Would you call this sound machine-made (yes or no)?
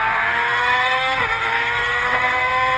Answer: yes